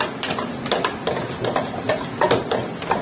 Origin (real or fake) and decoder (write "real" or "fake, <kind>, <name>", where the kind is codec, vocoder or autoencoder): real